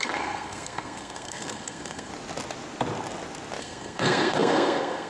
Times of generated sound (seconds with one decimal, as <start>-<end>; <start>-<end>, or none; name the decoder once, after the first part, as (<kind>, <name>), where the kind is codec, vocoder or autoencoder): 0.0-2.1 (codec, SNAC); 3.6-5.1